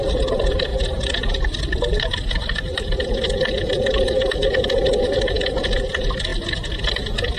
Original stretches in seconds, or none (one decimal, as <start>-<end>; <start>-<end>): 0.0-7.4